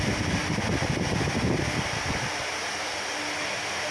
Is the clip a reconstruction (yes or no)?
no